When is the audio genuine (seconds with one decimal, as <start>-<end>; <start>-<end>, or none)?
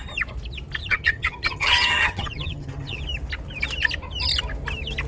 0.0-0.8; 3.0-5.1